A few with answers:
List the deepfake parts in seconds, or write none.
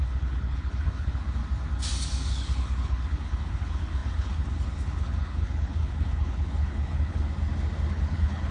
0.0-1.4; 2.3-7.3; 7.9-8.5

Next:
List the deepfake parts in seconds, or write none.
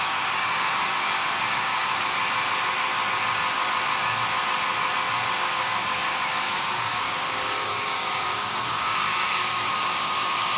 0.0-1.9; 5.4-10.6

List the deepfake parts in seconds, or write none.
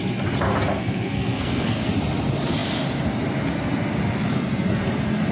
0.7-1.9; 4.3-4.8